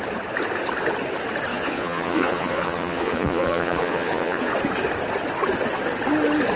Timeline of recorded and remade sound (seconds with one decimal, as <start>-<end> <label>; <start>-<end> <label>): 0.0-1.5 recorded; 1.5-4.5 remade; 4.5-6.6 recorded